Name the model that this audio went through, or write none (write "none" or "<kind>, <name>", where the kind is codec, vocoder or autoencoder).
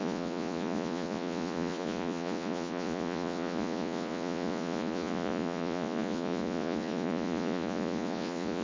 vocoder, Vocos